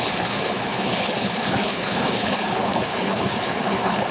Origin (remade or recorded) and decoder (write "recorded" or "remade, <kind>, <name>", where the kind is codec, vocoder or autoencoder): remade, codec, HILCodec